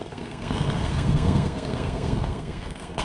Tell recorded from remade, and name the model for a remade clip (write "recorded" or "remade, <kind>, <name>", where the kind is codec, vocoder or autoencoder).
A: remade, codec, SNAC